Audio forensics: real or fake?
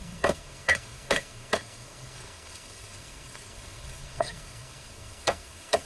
fake